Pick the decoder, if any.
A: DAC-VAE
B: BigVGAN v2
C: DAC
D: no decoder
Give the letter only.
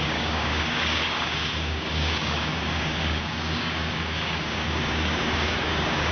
C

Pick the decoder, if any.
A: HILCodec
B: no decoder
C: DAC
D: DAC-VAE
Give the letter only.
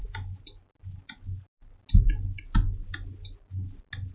B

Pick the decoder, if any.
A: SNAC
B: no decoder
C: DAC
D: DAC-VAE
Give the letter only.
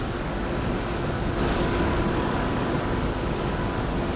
C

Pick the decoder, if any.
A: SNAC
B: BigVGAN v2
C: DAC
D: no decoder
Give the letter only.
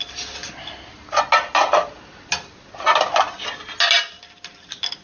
D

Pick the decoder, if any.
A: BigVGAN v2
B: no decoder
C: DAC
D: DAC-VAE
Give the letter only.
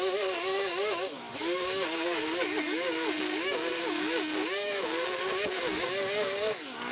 C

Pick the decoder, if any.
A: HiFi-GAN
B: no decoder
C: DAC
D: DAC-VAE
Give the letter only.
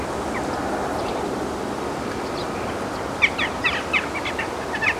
B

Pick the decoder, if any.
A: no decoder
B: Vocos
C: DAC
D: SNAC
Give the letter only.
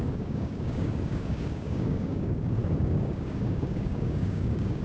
C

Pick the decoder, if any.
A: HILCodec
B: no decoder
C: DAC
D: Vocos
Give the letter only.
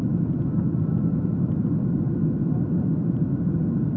B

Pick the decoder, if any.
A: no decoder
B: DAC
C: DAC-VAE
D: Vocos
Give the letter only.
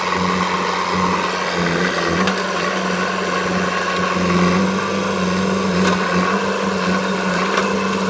A